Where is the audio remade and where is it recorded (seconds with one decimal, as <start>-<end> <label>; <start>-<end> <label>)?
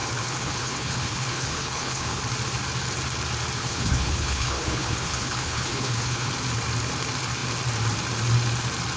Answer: 0.0-2.2 remade; 2.2-3.6 recorded; 3.6-6.3 remade; 6.3-9.0 recorded